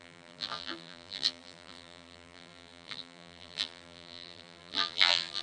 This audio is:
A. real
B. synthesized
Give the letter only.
B